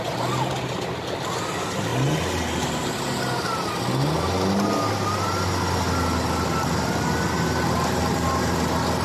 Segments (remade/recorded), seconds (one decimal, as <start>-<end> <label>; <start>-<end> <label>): 0.0-9.0 recorded